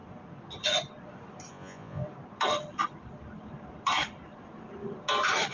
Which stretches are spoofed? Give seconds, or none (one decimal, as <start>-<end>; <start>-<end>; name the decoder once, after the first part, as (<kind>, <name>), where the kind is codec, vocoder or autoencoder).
1.5-2.0 (vocoder, Vocos)